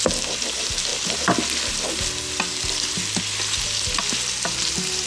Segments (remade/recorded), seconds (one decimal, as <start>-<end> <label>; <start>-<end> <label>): 0.0-5.1 recorded